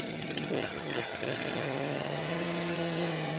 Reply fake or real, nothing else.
fake